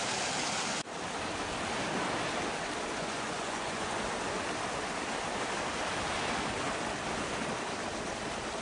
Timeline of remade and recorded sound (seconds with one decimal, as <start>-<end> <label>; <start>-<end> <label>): 0.0-3.0 recorded; 3.0-4.0 remade; 4.0-8.6 recorded